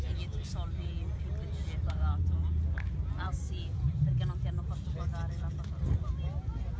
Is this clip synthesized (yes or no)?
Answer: no